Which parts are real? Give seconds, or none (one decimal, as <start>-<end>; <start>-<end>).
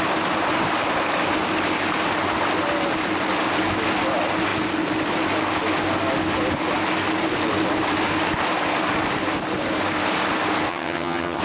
0.0-10.7